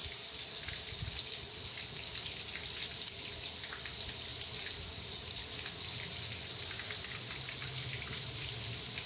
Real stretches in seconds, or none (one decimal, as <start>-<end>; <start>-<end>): 0.0-9.1